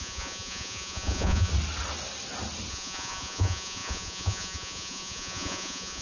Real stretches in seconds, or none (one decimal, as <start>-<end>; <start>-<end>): 1.5-2.7